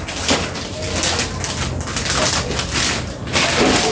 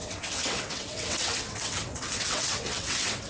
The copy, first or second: second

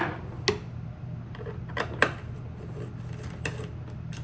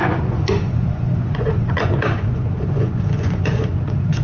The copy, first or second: second